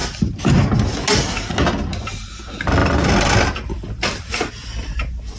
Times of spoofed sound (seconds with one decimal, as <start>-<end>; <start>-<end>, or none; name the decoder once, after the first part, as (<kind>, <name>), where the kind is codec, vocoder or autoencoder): 2.8-4.5 (vocoder, BigVGAN v2)